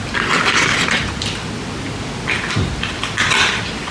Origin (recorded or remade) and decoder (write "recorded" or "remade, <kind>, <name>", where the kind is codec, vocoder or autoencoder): recorded